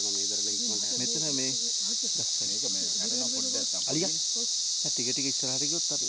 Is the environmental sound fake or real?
real